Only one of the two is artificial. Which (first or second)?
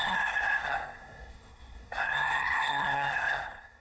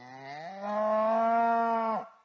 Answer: first